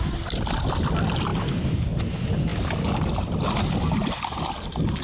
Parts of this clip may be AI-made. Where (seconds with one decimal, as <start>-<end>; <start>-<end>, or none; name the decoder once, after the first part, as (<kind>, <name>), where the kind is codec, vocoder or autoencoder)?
none